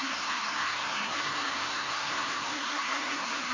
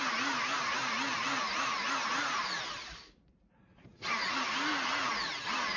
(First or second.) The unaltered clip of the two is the second